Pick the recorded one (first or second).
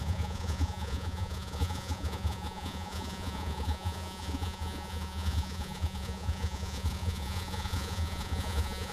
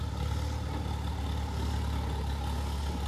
second